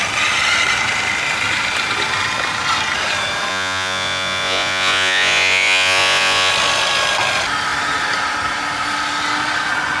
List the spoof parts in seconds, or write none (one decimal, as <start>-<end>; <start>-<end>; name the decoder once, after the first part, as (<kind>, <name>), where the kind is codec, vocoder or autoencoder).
3.5-6.5 (vocoder, Vocos)